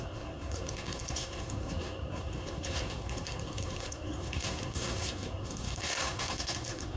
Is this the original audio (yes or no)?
no